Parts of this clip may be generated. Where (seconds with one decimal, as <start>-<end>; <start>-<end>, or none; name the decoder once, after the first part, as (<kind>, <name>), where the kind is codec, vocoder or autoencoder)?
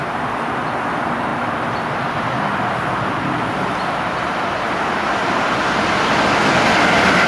none